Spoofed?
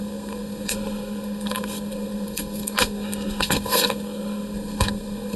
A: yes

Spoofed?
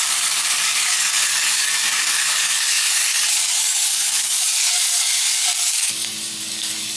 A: yes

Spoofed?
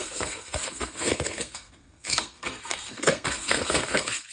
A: yes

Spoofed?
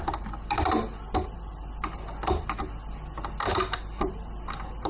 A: no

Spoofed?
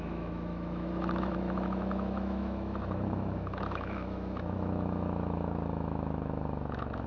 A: yes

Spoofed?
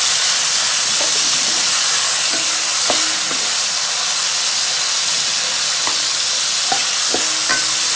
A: no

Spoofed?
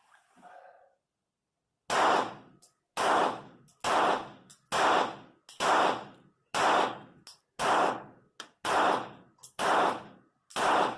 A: no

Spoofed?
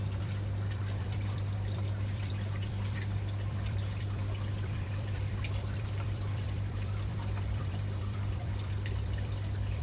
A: yes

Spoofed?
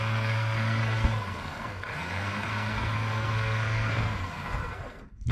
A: yes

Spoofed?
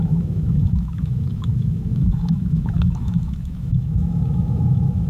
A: yes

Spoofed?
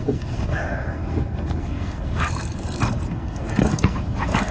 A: yes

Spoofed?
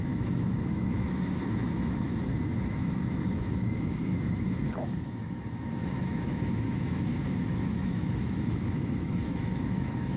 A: yes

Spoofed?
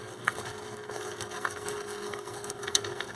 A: yes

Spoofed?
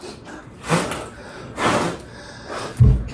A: no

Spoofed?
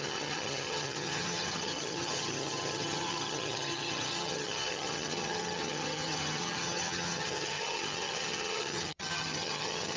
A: yes